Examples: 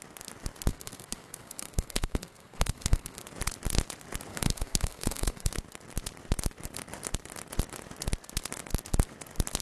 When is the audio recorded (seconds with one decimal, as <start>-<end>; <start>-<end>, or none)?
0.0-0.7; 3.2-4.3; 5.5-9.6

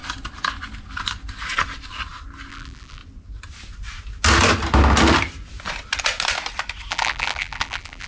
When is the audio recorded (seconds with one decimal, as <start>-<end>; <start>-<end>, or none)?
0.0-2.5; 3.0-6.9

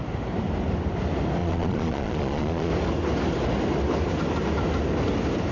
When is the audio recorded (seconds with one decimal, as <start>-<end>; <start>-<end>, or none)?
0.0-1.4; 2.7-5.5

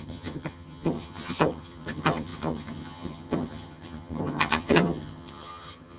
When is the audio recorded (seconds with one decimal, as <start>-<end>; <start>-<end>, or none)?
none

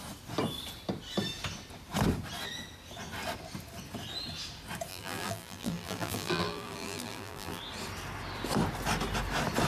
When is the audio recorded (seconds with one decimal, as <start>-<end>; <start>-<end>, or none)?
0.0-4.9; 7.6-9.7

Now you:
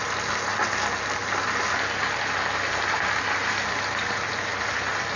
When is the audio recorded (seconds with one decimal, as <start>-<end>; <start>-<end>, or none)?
0.0-5.2